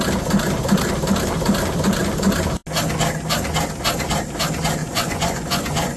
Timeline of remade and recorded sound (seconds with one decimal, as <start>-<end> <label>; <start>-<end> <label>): 0.0-4.8 recorded; 4.8-6.0 remade